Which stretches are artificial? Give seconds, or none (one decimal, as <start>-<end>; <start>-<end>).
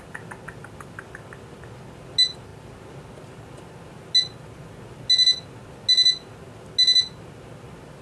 none